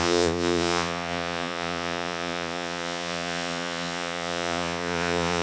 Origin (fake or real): fake